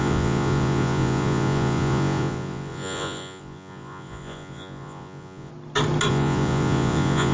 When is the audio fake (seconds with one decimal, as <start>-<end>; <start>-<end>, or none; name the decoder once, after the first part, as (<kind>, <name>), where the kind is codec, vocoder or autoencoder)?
0.0-5.5 (vocoder, Vocos); 6.1-7.3